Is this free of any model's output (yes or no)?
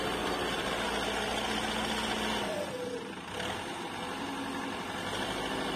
yes